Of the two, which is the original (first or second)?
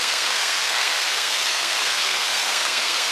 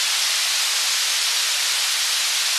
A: second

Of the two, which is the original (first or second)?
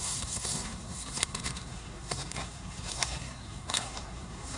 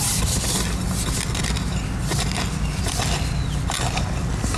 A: second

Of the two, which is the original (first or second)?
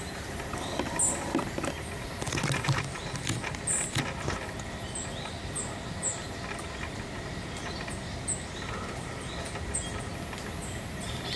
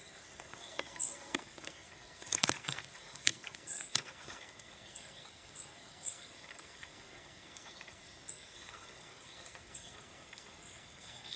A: first